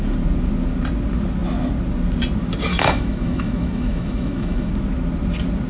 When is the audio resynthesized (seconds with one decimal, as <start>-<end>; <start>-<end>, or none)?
2.7-4.7